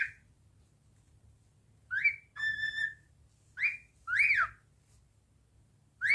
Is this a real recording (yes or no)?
yes